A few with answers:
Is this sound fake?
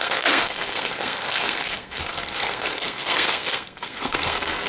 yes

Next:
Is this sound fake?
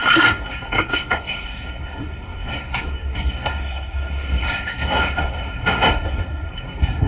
yes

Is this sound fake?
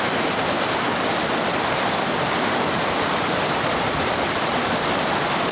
no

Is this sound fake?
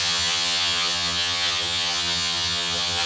yes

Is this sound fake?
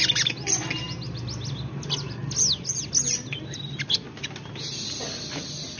no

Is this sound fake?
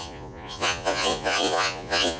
yes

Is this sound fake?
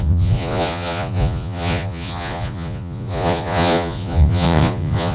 yes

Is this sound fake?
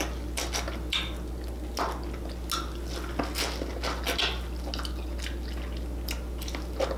no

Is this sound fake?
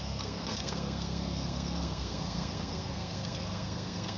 yes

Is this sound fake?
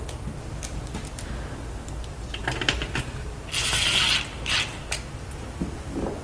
no